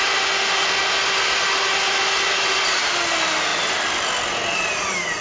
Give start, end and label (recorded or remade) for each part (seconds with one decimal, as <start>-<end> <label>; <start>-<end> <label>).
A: 0.0-5.2 recorded